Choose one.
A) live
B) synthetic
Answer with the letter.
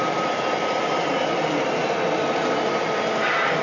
A